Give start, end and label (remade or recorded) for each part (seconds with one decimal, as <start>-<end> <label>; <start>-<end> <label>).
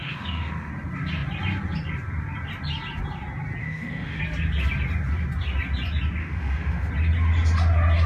0.0-0.7 remade; 0.7-3.6 recorded; 3.6-4.2 remade; 4.2-6.2 recorded; 6.2-6.9 remade; 6.9-8.1 recorded